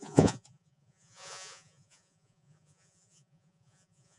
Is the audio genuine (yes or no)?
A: no